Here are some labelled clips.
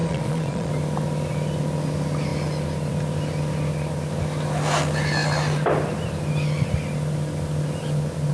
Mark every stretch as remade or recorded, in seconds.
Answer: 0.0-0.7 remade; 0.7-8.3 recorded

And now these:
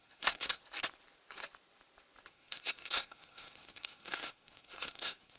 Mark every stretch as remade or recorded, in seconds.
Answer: 0.0-0.6 remade; 0.6-2.3 recorded; 2.3-5.4 remade

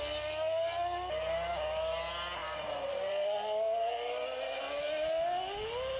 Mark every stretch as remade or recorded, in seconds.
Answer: 0.0-6.0 recorded

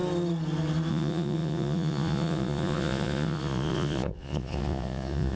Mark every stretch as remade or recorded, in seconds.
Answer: 0.0-0.9 recorded; 0.9-5.4 remade